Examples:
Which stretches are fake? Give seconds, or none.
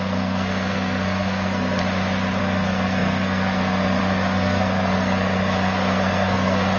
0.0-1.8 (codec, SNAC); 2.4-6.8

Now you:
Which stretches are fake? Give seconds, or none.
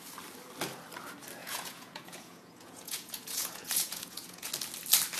1.4-4.5 (vocoder, Vocos)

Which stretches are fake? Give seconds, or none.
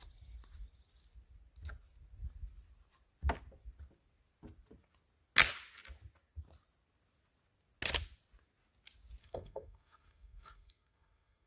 9.2-11.5 (codec, SNAC)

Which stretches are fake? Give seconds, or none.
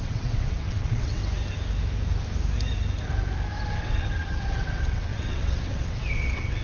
0.0-1.2 (vocoder, WaveNeXt); 3.7-6.6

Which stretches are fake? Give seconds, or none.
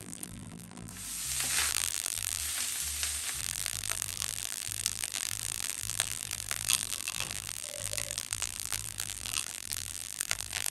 0.0-0.9 (vocoder, BigVGAN v2); 1.7-2.4; 3.4-10.7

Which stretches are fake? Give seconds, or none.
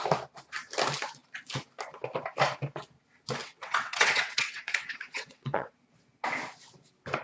3.4-5.7 (vocoder, WaveNeXt)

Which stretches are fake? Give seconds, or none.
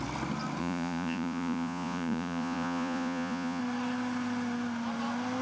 0.6-3.6 (vocoder, Vocos)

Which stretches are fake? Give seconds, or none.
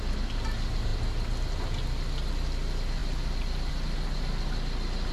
none